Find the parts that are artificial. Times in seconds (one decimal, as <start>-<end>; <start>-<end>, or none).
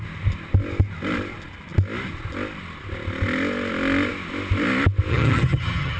5.1-6.0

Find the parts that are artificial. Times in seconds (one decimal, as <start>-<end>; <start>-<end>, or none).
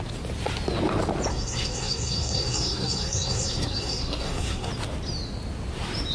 1.3-4.7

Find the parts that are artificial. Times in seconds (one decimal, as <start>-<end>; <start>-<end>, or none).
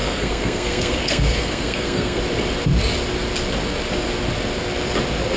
0.0-2.2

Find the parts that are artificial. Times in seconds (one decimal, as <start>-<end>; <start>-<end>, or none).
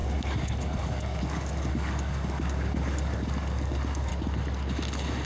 0.0-4.1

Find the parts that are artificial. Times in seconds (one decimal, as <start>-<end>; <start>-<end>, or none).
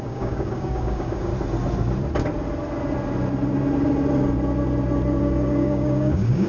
0.0-1.3; 5.2-6.5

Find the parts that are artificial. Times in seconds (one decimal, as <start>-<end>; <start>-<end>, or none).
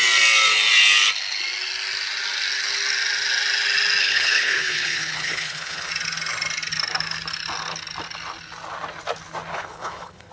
4.0-5.9; 9.5-10.3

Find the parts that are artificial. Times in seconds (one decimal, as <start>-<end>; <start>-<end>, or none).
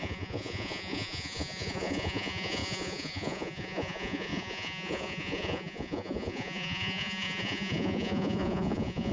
0.0-9.1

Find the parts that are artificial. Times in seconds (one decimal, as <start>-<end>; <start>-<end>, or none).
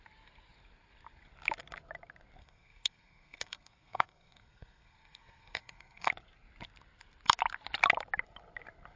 2.4-6.1